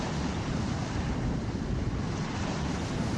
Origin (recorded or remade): recorded